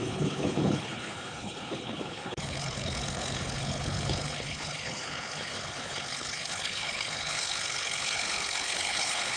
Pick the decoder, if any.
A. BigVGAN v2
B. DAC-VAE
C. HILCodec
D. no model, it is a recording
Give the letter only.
C